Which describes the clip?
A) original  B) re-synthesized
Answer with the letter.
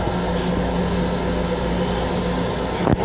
A